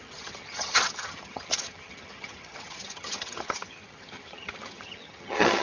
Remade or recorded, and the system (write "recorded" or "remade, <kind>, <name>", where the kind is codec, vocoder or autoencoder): remade, vocoder, HiFi-GAN